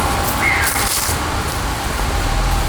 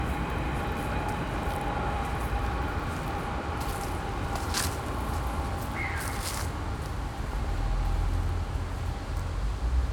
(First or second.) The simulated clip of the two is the first